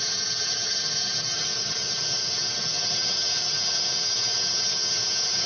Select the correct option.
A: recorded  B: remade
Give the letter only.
B